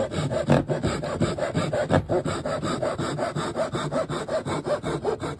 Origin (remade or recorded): recorded